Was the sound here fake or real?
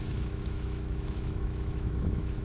fake